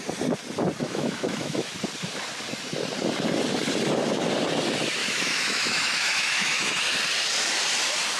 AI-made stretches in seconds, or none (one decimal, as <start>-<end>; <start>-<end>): 0.8-1.7; 5.0-6.8